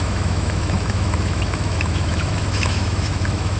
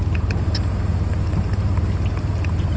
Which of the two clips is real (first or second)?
second